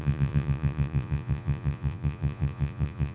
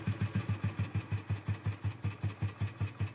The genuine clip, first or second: second